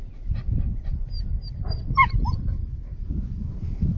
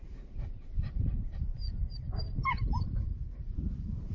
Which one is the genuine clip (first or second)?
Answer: first